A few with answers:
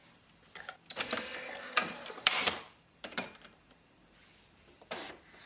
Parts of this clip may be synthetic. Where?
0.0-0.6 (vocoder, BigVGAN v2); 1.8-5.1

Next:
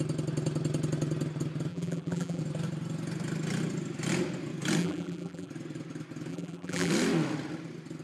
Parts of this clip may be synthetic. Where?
1.7-2.4 (vocoder, BigVGAN v2); 4.8-5.5; 6.3-6.9

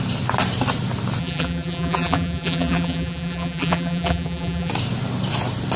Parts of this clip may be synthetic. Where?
1.2-4.7 (vocoder, BigVGAN v2)

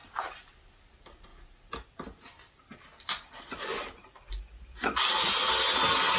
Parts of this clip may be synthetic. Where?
none

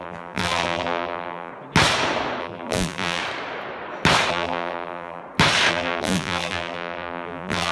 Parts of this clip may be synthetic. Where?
0.0-1.5 (vocoder, BigVGAN v2); 2.4-3.2; 4.3-5.2; 5.7-7.7

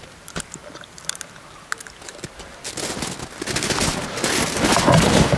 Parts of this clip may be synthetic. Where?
none

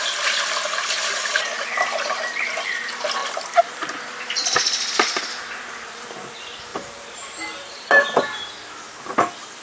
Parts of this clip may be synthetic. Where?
3.2-4.0 (vocoder, BigVGAN v2); 6.7-8.5